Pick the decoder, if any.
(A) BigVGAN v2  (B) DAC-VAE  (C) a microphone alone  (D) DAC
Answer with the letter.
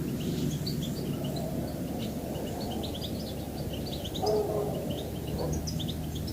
C